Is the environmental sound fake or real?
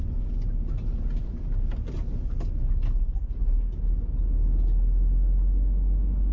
real